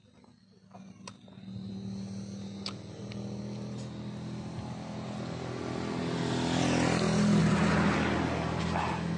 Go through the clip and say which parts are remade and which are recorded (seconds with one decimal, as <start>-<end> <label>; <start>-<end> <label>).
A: 0.0-9.2 recorded